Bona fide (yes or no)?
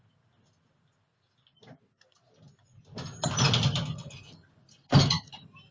yes